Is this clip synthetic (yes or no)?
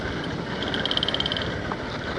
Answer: no